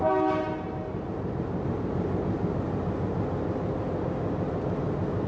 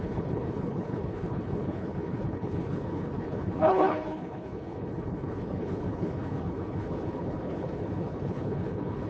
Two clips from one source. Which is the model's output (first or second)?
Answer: second